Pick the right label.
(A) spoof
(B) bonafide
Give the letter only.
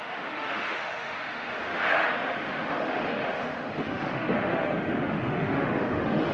A